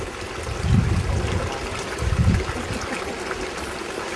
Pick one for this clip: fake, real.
real